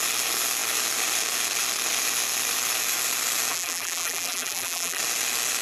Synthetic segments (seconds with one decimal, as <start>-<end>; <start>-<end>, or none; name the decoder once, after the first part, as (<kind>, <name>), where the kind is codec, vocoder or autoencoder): 3.5-5.0 (vocoder, BigVGAN v2)